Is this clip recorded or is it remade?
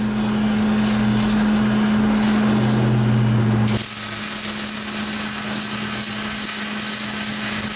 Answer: recorded